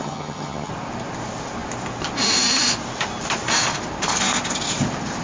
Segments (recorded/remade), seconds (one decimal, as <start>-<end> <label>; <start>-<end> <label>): 0.0-0.7 remade; 0.7-5.2 recorded